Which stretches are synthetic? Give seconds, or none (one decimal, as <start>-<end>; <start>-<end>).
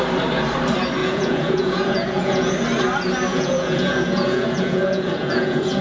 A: 1.0-2.5; 3.3-5.8